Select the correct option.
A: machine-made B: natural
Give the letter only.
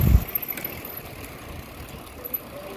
B